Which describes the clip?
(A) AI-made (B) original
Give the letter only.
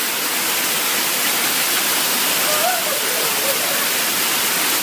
B